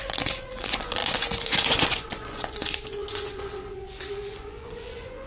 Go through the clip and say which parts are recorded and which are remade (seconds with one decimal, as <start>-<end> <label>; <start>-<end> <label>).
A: 0.0-5.3 remade